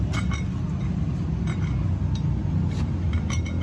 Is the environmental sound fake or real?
real